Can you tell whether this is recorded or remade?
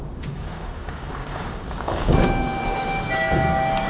remade